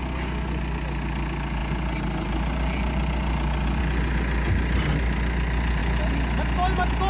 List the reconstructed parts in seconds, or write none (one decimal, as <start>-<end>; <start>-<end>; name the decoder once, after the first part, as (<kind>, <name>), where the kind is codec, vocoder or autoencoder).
none

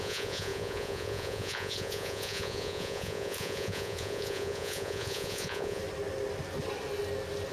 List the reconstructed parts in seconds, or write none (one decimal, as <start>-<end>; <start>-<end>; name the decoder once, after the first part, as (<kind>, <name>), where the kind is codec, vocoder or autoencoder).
0.0-5.8 (vocoder, Vocos)

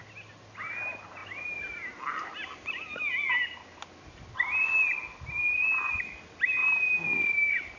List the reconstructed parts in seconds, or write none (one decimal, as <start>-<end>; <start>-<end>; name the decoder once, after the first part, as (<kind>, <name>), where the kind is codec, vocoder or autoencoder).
none

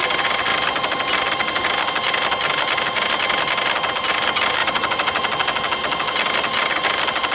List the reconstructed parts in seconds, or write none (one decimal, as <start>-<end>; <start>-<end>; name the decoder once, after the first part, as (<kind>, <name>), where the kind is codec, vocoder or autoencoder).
4.6-5.2 (vocoder, Vocos)

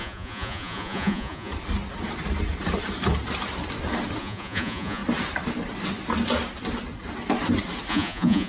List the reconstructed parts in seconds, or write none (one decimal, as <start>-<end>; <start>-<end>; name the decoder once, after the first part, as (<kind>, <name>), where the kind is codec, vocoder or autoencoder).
0.0-1.5 (vocoder, Vocos); 4.2-5.0; 7.9-8.5

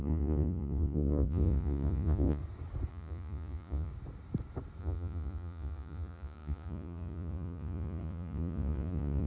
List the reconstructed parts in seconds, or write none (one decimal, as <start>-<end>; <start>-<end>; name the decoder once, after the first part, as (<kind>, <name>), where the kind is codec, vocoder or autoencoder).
0.0-2.4 (vocoder, Vocos); 2.9-3.9; 4.8-9.3

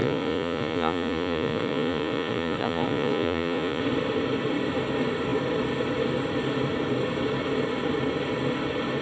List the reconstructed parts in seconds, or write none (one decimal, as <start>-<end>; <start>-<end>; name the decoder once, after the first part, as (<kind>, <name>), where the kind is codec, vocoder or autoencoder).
0.0-3.8 (vocoder, Vocos)

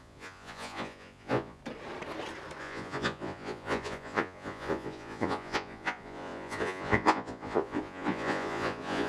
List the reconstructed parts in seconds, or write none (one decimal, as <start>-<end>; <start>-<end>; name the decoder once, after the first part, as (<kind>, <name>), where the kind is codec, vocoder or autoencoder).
0.0-1.6 (vocoder, Vocos); 2.6-9.1